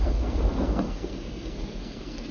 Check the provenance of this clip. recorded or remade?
remade